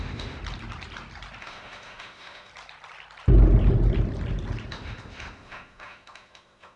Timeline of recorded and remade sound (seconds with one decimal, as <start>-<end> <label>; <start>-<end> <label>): 0.0-0.4 remade; 0.4-1.4 recorded; 1.4-2.5 remade; 2.5-4.7 recorded; 4.7-6.8 remade